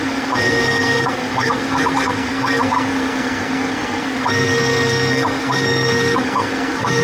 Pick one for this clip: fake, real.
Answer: fake